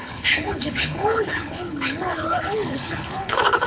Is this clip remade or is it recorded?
remade